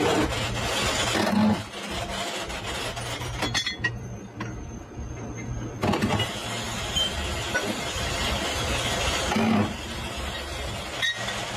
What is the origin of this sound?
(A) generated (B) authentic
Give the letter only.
B